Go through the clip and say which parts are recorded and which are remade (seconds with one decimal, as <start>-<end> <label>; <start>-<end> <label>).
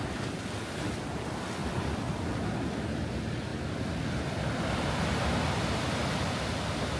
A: 0.0-1.6 recorded; 1.6-2.5 remade; 2.5-7.0 recorded